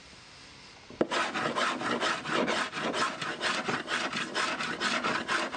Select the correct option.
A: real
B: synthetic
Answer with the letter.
A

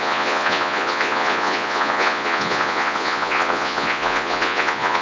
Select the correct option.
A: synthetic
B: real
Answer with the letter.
A